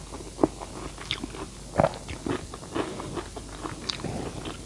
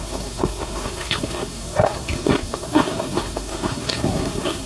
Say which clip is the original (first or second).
first